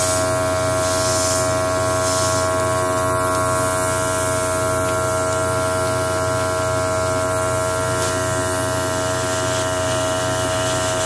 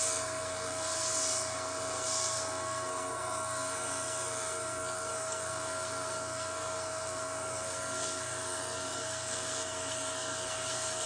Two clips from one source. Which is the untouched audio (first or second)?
first